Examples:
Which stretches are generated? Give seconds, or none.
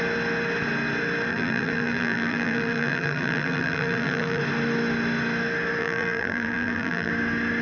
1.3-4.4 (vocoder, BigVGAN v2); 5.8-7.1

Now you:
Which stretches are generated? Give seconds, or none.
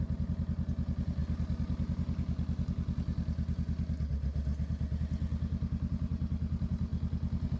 none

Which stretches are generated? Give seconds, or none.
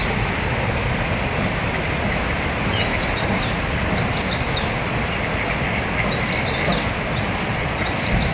0.0-2.9 (vocoder, BigVGAN v2); 6.0-6.7; 7.3-8.3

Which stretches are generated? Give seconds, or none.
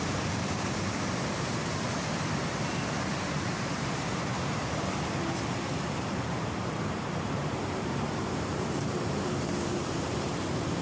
0.0-1.6 (vocoder, BigVGAN v2); 3.0-10.8